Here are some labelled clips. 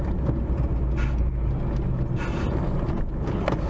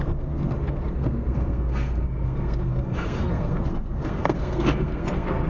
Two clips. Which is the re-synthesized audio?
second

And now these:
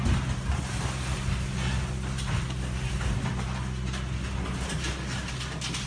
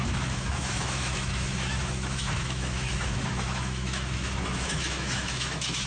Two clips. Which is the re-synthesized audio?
second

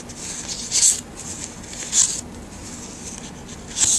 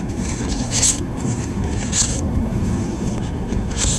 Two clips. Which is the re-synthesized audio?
second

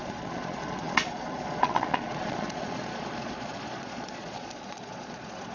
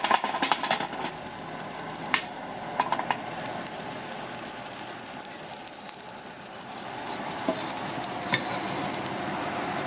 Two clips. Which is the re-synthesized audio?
first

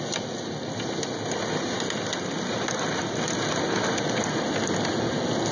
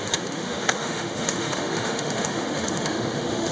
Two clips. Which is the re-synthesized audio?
second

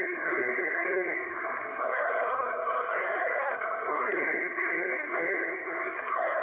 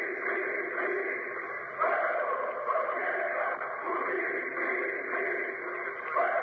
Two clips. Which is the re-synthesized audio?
first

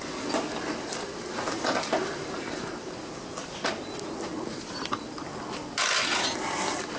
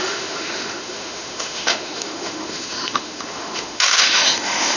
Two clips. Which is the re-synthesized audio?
second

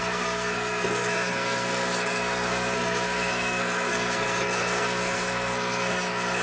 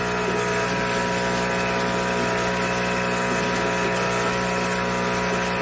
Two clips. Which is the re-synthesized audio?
first